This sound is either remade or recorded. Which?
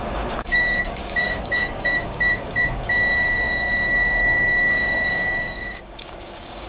remade